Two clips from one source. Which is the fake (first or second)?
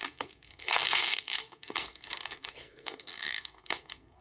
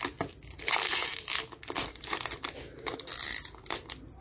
first